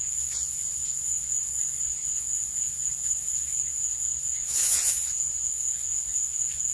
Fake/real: fake